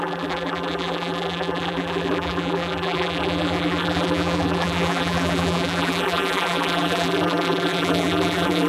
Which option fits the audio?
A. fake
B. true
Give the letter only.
A